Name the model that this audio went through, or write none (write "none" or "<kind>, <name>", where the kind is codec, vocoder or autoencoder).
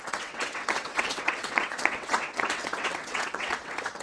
vocoder, WaveNeXt